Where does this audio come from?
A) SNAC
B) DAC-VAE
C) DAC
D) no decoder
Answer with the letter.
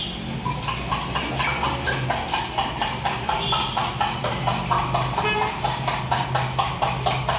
D